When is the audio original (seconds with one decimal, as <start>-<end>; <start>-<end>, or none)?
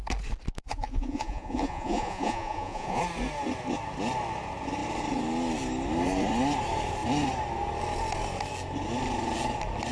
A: 0.0-0.6; 3.0-9.9